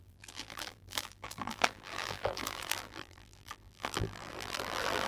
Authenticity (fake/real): fake